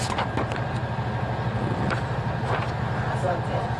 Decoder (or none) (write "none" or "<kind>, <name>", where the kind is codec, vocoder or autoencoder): none